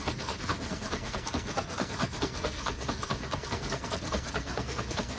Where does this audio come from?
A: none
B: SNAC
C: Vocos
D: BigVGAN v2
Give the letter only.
B